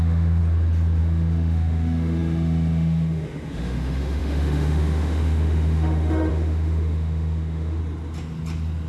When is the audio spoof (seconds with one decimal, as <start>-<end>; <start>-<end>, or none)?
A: 0.0-0.4; 1.0-7.8